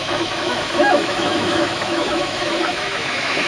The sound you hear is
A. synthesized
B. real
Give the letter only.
A